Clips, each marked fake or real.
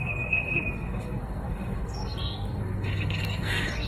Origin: fake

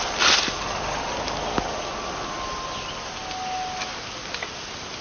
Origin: real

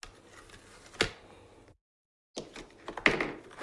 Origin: real